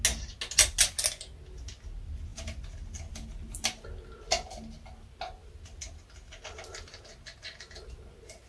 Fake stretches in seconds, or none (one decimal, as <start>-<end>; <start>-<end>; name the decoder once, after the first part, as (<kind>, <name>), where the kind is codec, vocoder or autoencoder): none